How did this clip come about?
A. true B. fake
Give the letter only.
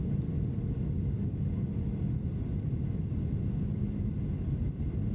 A